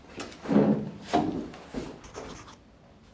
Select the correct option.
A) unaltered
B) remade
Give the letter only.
A